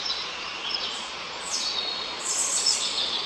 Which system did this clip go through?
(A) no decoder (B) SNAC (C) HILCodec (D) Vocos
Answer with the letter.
D